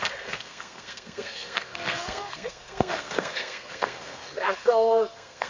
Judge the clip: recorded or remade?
remade